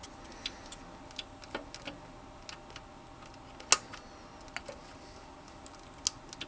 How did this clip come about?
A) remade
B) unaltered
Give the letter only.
B